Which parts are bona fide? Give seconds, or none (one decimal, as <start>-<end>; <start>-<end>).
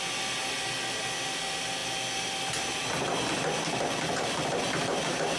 0.0-5.4